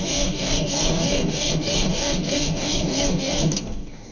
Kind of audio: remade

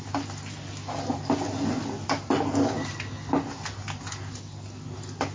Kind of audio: recorded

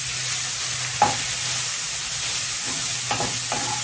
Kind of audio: recorded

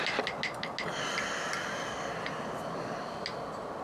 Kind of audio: recorded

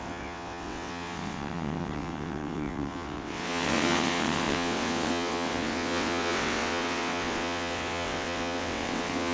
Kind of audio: remade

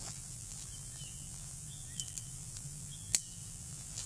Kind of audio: remade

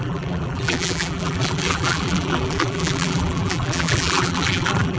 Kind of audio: remade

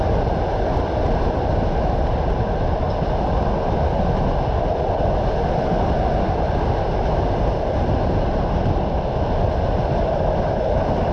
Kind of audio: recorded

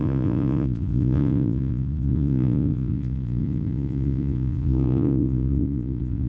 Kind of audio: remade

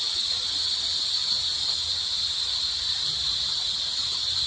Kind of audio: recorded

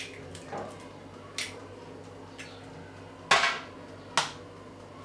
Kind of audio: recorded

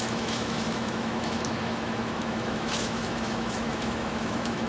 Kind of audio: remade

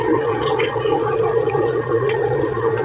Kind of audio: remade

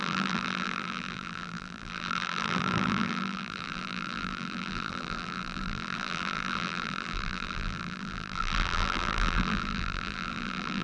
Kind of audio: remade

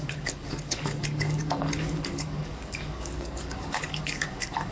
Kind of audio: remade